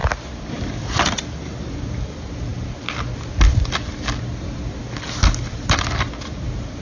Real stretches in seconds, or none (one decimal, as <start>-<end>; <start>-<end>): 0.0-6.8

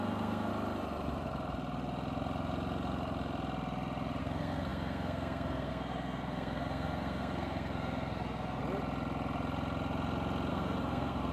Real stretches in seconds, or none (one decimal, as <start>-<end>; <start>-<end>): 0.5-4.2; 8.6-10.5

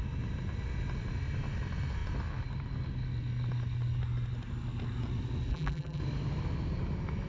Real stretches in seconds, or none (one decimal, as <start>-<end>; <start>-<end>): 0.0-5.5; 6.0-7.3

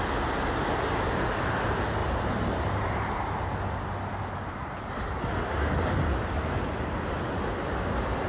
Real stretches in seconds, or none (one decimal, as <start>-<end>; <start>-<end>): 0.0-2.0; 3.4-4.5; 5.2-8.3

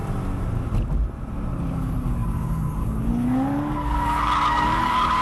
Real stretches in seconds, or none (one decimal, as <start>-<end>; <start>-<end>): 0.0-1.6

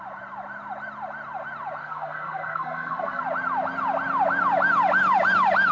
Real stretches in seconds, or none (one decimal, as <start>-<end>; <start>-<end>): 0.0-1.8; 3.2-5.7

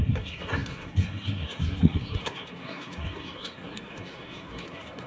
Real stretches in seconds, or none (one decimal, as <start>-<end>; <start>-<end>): none